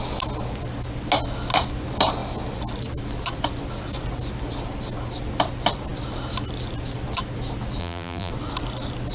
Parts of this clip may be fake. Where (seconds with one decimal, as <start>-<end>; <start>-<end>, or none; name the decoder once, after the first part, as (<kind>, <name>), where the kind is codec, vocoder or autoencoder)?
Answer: 7.8-8.3 (vocoder, BigVGAN v2)